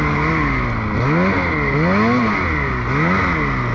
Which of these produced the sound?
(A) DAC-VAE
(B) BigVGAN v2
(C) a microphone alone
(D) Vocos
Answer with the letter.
C